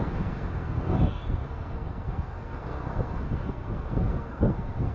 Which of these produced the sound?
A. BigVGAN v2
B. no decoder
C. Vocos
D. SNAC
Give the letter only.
D